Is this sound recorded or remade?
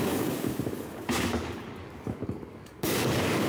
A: remade